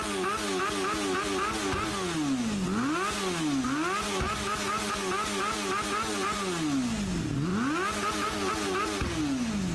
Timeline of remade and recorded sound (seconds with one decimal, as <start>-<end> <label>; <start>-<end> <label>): 0.0-9.7 recorded